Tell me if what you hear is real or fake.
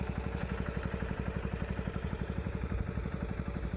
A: fake